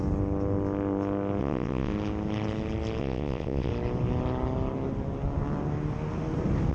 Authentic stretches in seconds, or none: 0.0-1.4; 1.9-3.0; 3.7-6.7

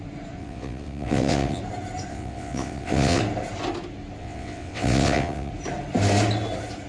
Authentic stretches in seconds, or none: 0.0-0.4; 1.6-2.1; 3.2-4.2; 5.5-6.9

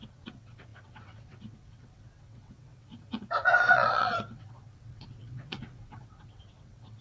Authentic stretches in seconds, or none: none

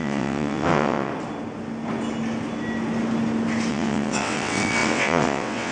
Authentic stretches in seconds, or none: 1.1-3.7

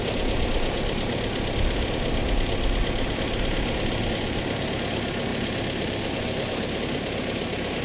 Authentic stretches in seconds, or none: 0.0-7.8